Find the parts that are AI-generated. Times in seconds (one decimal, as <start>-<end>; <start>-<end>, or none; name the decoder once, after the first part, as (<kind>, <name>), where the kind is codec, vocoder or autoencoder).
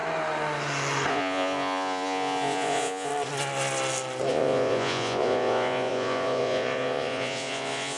1.1-3.1 (vocoder, Vocos); 4.3-8.0